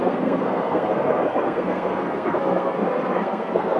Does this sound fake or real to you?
fake